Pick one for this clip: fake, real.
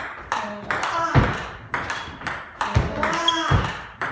real